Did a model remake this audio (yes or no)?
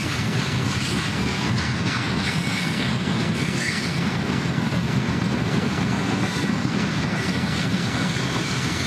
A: yes